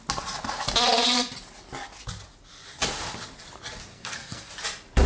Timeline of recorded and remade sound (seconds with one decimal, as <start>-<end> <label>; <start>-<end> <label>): 0.0-3.9 recorded; 3.9-4.5 remade; 4.5-5.1 recorded